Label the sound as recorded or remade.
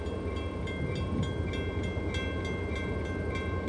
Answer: recorded